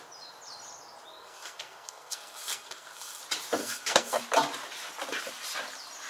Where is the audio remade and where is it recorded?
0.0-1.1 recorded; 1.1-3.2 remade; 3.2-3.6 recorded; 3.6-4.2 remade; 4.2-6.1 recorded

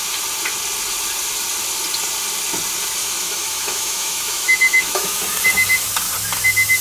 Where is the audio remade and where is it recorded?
0.0-3.0 recorded; 3.0-5.2 remade; 5.2-6.8 recorded

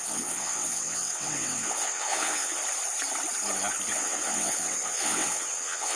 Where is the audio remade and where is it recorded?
0.0-2.6 remade; 2.6-3.9 recorded; 3.9-6.0 remade

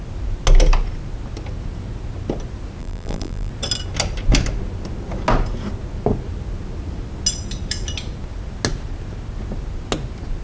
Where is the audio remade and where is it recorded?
0.0-2.8 recorded; 2.8-3.5 remade; 3.5-10.4 recorded

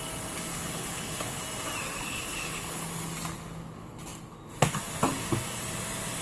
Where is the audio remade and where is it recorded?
0.0-0.5 recorded; 0.5-1.4 remade; 1.4-2.0 recorded; 2.0-2.8 remade; 2.8-6.2 recorded